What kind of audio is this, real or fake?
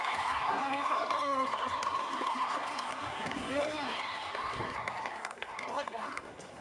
fake